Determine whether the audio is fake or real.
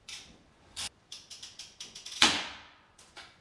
fake